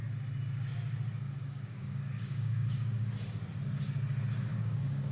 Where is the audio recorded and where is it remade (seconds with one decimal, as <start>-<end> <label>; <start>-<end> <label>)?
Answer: 0.0-1.4 recorded; 1.4-3.1 remade; 3.1-4.5 recorded; 4.5-5.1 remade